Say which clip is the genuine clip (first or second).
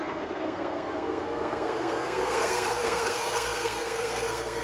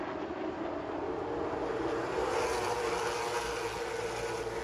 second